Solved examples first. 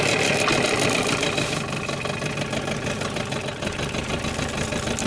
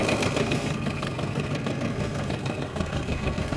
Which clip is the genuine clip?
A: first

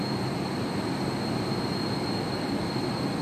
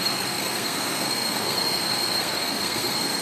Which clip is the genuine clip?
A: first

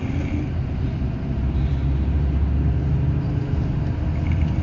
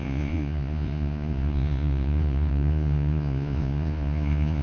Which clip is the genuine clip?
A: first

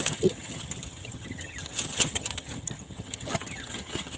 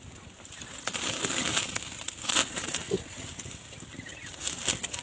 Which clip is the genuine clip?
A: second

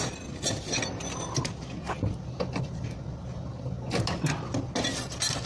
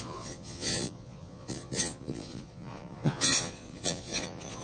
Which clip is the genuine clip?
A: first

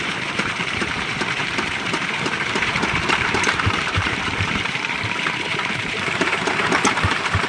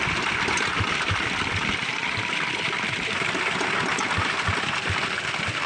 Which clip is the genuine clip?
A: second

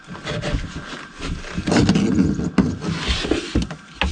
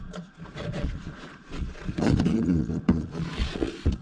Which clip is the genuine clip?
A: first